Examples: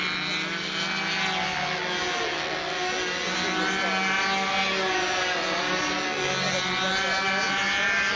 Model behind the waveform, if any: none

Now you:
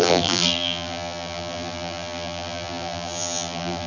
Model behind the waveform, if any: vocoder, BigVGAN v2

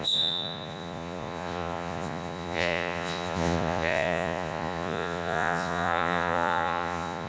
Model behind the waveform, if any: vocoder, Vocos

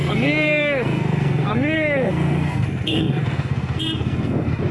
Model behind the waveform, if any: codec, SNAC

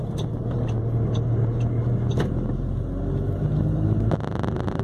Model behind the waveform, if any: none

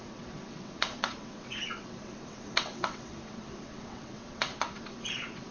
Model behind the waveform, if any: vocoder, WaveNeXt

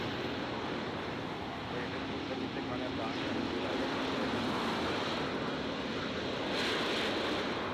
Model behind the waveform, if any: none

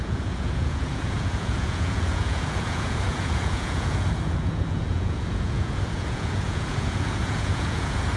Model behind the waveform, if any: vocoder, Vocos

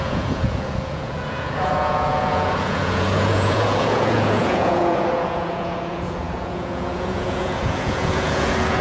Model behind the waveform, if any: vocoder, Vocos